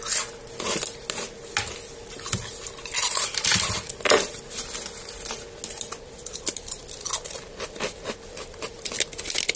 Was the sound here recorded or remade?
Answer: recorded